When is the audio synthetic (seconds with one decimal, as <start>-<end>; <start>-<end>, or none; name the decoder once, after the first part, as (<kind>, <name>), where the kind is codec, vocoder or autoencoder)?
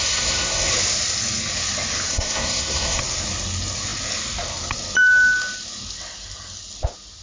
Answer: 0.0-0.7 (codec, SNAC); 2.1-3.0